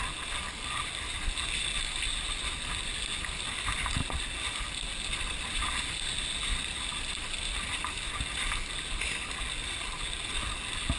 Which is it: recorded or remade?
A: recorded